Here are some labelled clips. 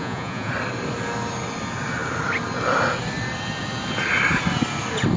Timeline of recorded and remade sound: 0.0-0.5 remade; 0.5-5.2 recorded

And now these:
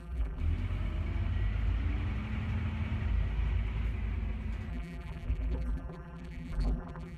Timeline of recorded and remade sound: 0.0-0.4 remade; 0.4-4.7 recorded; 4.7-7.2 remade

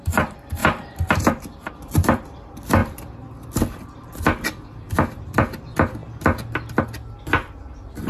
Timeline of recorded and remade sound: 0.0-2.8 remade; 2.8-5.2 recorded; 5.2-6.0 remade; 6.0-7.2 recorded; 7.2-8.1 remade

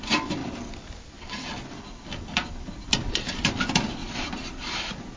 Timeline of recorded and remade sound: 0.0-5.2 recorded

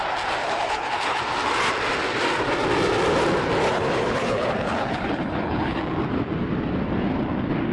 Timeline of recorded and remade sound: 0.0-0.4 recorded; 0.4-1.2 remade; 1.2-3.7 recorded; 3.7-5.8 remade; 5.8-7.7 recorded

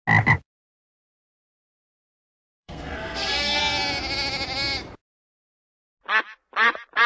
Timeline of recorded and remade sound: 0.0-1.5 recorded; 1.5-3.6 remade; 3.6-7.1 recorded